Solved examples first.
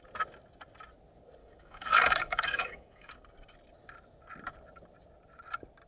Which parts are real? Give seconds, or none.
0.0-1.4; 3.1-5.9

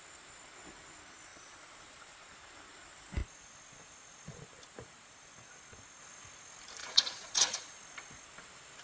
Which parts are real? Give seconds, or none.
0.0-1.3; 2.3-6.8; 7.8-8.8

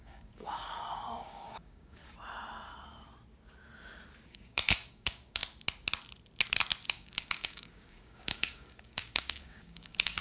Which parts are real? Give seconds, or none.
2.0-4.3; 5.4-6.9

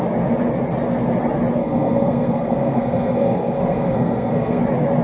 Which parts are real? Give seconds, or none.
0.0-1.6; 4.6-5.0

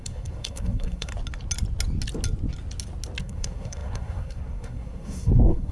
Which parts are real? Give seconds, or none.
1.1-3.2

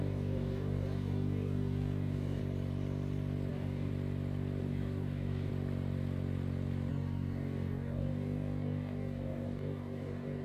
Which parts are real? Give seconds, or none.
2.4-3.5; 3.9-4.6; 5.5-6.9

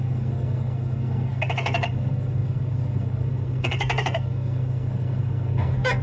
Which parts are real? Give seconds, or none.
none

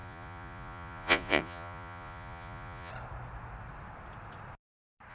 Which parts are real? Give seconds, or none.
2.9-5.1